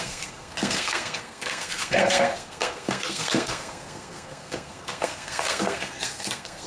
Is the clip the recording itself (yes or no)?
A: no